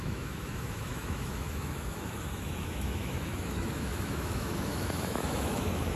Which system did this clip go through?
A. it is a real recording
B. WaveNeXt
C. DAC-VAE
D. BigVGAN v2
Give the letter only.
C